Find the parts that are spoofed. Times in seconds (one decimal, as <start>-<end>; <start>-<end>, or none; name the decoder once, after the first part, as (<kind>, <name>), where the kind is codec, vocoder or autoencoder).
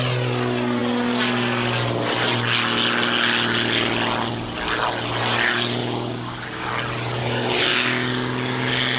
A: 5.8-6.7 (codec, DAC); 7.2-9.0